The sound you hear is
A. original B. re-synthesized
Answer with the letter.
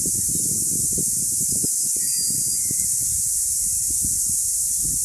A